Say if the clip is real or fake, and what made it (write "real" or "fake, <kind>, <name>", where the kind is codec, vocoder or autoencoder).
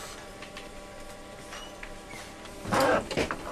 fake, vocoder, BigVGAN v2